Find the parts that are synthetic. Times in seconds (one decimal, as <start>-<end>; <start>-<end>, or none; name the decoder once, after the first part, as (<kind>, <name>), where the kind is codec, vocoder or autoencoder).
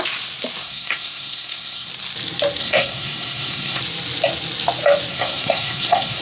0.6-1.9 (codec, SNAC); 2.6-3.8; 5.1-6.2